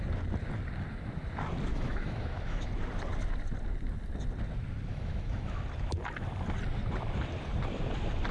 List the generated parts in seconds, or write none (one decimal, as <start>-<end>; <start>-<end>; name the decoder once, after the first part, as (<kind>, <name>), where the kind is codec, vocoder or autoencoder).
1.7-2.7 (autoencoder, DAC-VAE); 4.9-5.6